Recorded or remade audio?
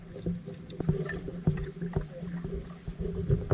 recorded